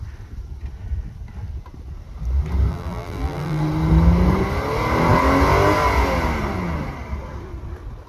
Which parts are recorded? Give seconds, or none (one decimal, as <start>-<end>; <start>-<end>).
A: 0.0-2.7; 3.6-8.1